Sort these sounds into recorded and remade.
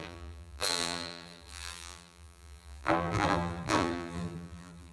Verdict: remade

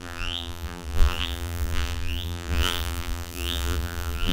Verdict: remade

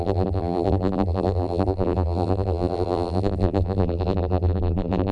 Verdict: remade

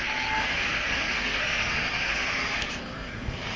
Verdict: remade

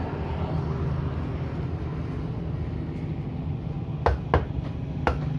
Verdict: recorded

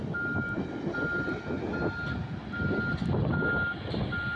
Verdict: recorded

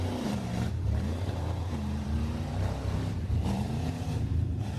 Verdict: remade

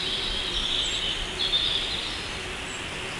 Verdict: recorded